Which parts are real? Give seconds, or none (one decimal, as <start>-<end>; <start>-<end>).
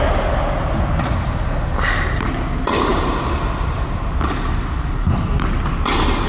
0.0-6.3